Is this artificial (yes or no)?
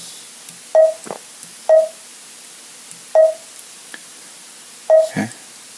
no